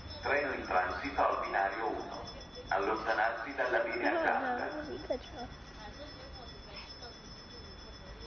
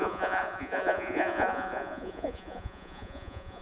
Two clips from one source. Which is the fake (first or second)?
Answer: second